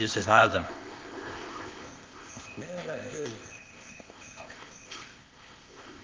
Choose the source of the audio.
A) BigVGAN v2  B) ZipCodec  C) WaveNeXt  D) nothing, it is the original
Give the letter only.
B